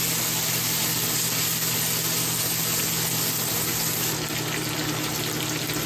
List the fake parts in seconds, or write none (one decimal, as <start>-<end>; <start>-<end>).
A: none